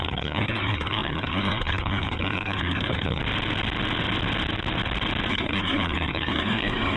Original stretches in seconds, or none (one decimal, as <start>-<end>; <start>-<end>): 3.2-5.3